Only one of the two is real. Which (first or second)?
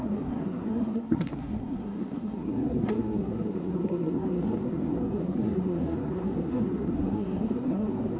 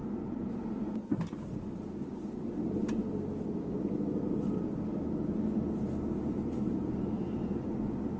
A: second